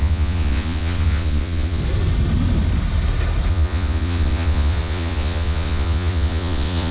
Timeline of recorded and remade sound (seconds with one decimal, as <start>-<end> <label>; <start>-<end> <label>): 0.0-1.8 remade; 1.8-3.5 recorded; 3.5-6.9 remade